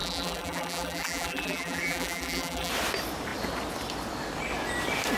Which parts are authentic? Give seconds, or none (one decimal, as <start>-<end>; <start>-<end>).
2.7-5.2